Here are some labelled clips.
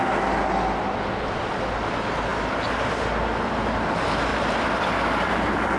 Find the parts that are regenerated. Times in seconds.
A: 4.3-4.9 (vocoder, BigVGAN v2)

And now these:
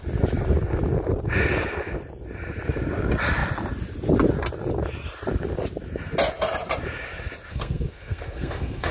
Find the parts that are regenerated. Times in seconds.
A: 7.5-8.9 (codec, SNAC)

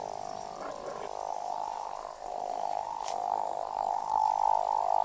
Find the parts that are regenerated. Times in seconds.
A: 1.3-4.3 (codec, SNAC)